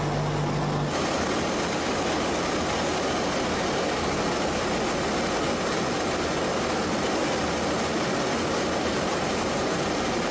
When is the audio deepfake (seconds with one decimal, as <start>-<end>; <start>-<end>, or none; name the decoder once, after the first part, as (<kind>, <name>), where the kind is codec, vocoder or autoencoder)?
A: 8.9-10.3 (vocoder, BigVGAN v2)